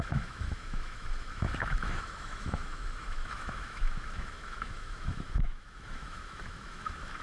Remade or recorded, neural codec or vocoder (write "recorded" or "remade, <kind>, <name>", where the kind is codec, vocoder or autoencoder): remade, autoencoder, DAC-VAE